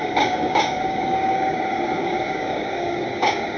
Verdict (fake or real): fake